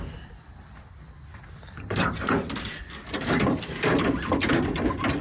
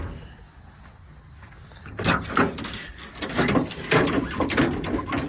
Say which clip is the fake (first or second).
first